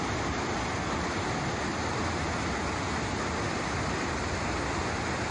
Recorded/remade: recorded